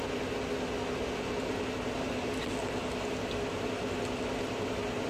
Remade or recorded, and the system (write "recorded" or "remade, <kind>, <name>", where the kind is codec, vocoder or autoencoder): recorded